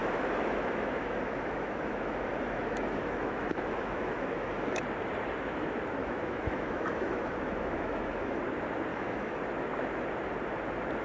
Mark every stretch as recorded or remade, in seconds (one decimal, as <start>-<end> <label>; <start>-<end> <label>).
0.0-4.8 remade; 4.8-6.0 recorded; 6.0-8.4 remade; 8.4-8.9 recorded; 8.9-9.4 remade; 9.4-11.0 recorded